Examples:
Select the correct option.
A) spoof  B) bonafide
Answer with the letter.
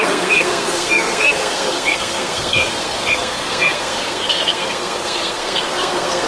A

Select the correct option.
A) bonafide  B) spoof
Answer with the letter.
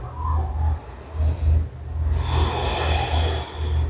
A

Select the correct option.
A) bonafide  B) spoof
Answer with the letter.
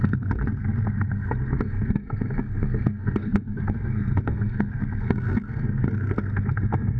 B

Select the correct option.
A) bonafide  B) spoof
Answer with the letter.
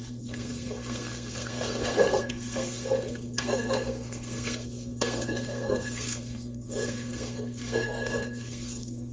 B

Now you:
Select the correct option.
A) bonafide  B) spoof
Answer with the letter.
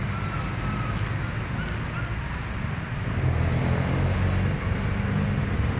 A